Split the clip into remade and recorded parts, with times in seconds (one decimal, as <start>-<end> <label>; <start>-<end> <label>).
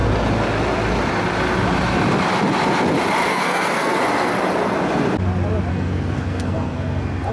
0.0-3.3 recorded; 3.3-4.0 remade; 4.0-5.7 recorded; 5.7-7.3 remade